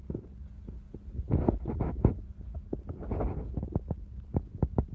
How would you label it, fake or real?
real